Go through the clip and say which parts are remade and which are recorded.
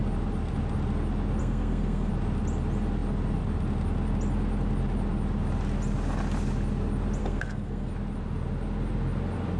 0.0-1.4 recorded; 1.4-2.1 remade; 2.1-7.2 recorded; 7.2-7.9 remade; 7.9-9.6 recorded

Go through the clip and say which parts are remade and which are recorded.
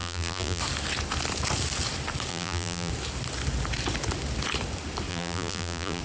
0.0-0.6 remade; 0.6-2.3 recorded; 2.3-2.9 remade; 2.9-5.1 recorded; 5.1-6.0 remade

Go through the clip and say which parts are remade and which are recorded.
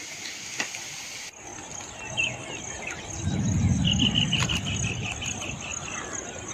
0.0-6.5 recorded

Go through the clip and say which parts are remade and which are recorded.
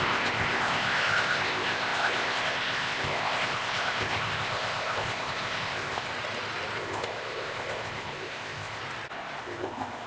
0.0-6.1 remade; 6.1-6.8 recorded; 6.8-8.8 remade; 8.8-9.4 recorded; 9.4-10.1 remade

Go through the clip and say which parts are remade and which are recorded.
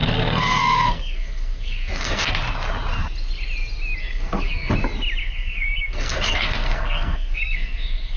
0.0-2.3 remade; 2.3-4.0 recorded; 4.0-4.7 remade; 4.7-5.2 recorded; 5.2-8.2 remade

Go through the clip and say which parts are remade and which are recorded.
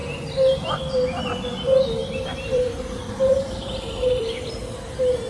0.0-0.8 remade; 0.8-2.0 recorded; 2.0-4.5 remade; 4.5-5.3 recorded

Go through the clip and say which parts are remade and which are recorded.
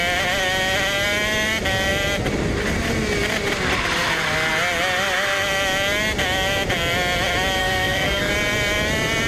0.0-7.6 recorded; 7.6-8.3 remade; 8.3-9.3 recorded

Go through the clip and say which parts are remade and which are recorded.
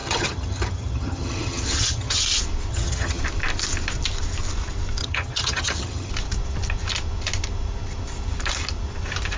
0.0-2.2 remade; 2.2-2.7 recorded; 2.7-3.2 remade; 3.2-5.0 recorded; 5.0-6.1 remade; 6.1-9.4 recorded